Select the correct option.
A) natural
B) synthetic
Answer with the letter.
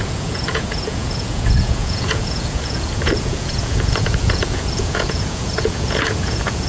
B